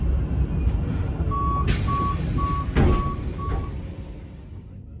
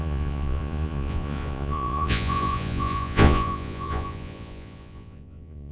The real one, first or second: first